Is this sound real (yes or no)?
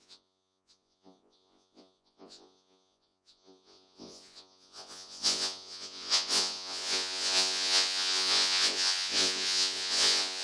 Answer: no